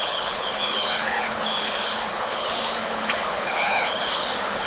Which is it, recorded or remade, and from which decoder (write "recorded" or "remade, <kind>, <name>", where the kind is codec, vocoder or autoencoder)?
remade, codec, HILCodec